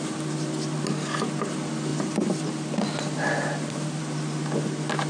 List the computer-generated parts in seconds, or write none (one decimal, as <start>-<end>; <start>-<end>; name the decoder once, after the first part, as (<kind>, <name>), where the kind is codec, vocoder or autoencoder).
none